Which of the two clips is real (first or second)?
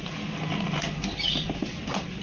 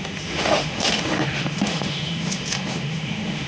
first